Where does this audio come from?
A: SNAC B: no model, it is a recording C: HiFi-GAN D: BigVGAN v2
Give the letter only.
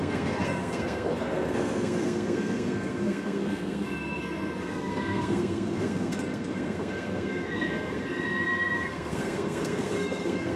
A